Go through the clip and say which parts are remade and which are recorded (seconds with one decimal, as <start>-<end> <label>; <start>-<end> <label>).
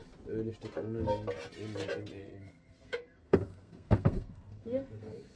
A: 0.0-2.2 recorded; 2.2-5.4 remade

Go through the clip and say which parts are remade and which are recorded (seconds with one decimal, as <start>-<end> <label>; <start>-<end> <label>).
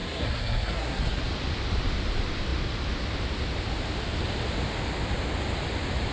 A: 0.0-1.2 remade; 1.2-6.1 recorded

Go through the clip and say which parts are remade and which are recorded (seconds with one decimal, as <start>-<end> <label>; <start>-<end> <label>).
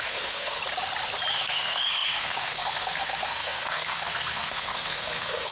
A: 0.0-0.6 remade; 0.6-1.3 recorded; 1.3-5.5 remade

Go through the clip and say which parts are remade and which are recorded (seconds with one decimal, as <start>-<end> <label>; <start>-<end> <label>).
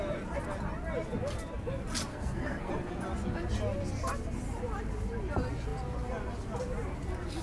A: 0.0-2.1 recorded; 2.1-2.7 remade; 2.7-7.4 recorded